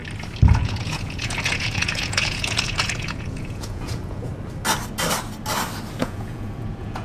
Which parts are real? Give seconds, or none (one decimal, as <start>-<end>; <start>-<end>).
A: 0.0-0.5; 4.3-6.0